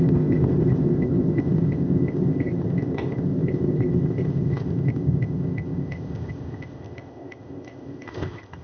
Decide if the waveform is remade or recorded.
remade